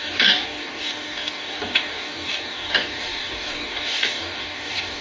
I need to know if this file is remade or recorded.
remade